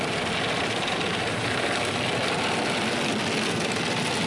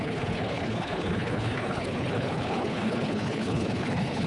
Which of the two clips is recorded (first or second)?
first